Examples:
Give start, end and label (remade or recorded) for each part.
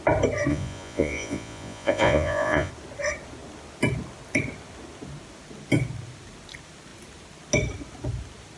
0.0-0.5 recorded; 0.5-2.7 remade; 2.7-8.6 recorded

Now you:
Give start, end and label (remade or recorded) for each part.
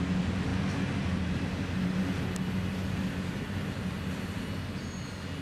0.0-5.4 recorded